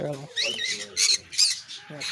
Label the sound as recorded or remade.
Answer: recorded